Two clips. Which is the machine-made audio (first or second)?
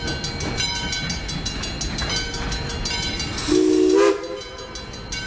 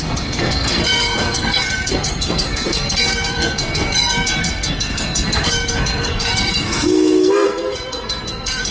second